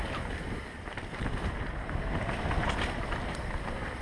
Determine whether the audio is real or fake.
fake